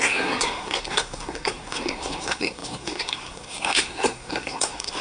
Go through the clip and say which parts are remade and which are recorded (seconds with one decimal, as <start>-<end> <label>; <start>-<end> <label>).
0.0-5.0 remade